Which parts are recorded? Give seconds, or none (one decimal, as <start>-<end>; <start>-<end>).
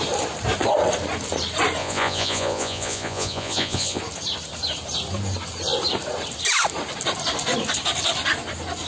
0.0-1.8; 4.0-8.9